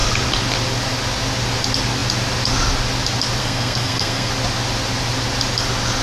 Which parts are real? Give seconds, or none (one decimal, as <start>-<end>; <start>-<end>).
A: 0.0-3.4; 4.3-6.0

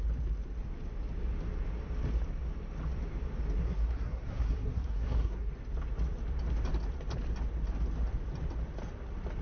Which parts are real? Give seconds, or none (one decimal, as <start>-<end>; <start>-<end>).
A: 0.0-3.6; 5.5-9.4

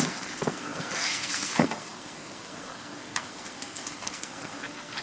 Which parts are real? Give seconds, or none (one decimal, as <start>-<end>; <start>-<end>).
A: none

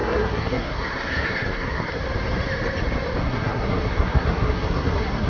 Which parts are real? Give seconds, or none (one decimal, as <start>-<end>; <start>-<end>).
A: 2.0-3.2